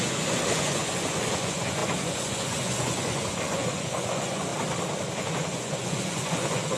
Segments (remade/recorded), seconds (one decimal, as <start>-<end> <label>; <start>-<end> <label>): 0.0-4.5 remade; 4.5-5.2 recorded; 5.2-6.8 remade